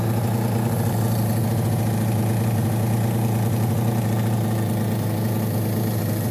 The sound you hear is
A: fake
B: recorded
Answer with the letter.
B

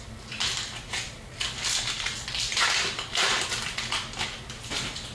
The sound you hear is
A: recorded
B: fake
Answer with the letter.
A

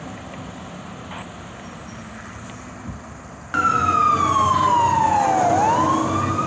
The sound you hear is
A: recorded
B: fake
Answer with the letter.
A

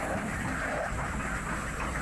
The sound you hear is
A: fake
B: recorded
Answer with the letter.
A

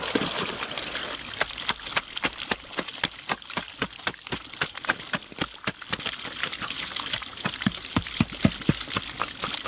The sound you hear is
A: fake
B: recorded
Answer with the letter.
B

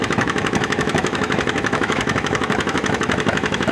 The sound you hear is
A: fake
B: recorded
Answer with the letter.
A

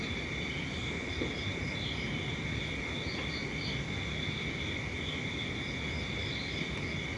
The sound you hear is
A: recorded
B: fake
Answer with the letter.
A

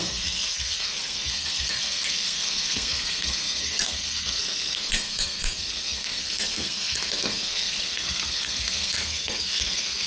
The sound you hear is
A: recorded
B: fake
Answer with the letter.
B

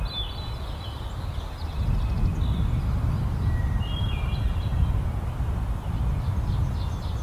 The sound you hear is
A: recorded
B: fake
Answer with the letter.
A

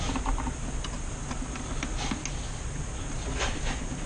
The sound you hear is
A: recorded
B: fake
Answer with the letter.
A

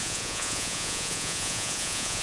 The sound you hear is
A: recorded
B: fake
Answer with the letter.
B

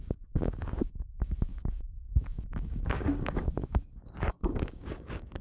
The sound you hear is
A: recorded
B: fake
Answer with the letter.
B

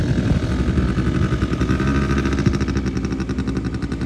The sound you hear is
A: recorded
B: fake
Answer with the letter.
A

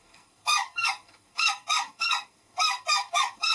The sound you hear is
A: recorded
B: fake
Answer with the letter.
B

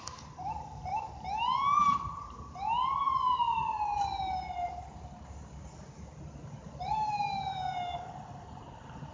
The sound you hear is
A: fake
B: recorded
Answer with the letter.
B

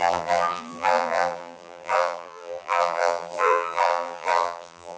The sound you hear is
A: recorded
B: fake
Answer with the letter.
B